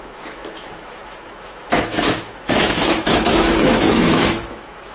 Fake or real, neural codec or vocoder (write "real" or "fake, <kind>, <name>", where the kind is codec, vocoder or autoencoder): fake, autoencoder, DAC-VAE